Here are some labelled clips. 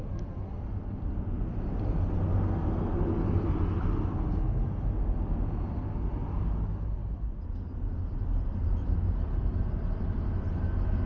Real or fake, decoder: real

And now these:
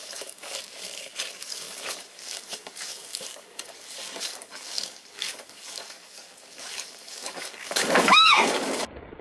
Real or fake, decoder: fake, codec, DAC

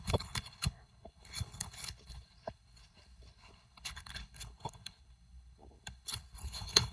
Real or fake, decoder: fake, codec, HILCodec